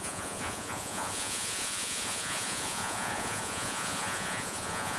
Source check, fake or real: fake